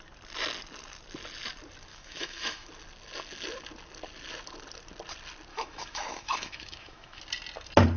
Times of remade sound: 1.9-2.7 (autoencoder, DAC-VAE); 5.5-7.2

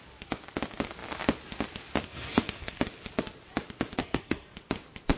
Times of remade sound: 2.0-2.8 (codec, SNAC); 4.0-4.5

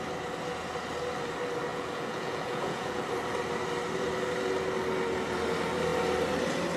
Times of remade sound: 1.7-3.0 (vocoder, Vocos)

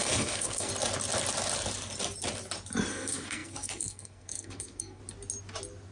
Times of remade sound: 0.0-0.7 (codec, SNAC); 2.9-5.0

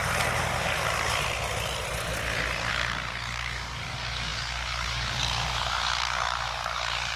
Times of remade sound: 2.7-7.2 (codec, DAC)

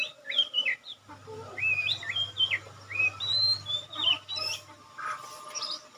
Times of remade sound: none

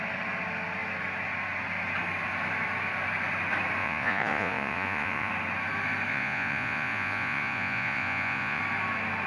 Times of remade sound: 3.8-5.3 (vocoder, Vocos); 6.1-8.6

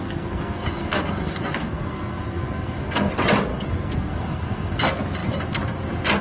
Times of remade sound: 0.0-3.1 (codec, SNAC); 3.5-4.8